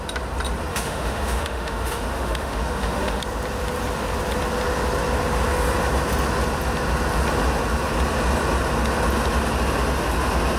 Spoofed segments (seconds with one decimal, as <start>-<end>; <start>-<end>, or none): 0.7-3.2